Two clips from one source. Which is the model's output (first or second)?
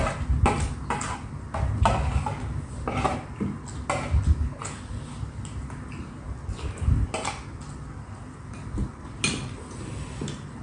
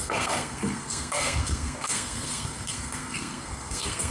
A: second